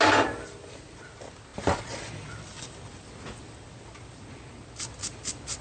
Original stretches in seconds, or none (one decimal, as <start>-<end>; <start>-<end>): 0.0-5.6

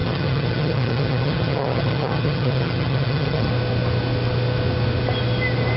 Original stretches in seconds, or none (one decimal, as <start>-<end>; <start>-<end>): 3.5-5.8

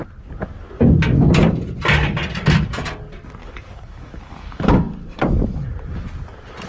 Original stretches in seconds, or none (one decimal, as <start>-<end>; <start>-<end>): 0.0-3.4; 5.2-6.7

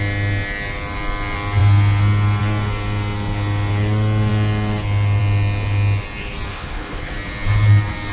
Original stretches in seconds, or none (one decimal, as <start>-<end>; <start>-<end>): 0.0-6.5; 7.1-8.1

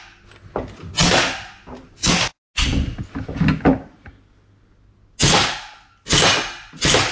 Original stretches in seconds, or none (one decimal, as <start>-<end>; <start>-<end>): 0.0-7.1